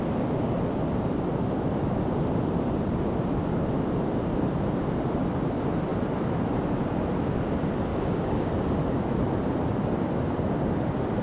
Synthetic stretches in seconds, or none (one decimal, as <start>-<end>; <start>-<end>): 7.9-8.5